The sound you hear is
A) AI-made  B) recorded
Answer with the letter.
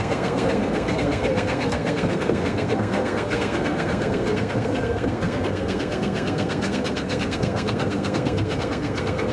A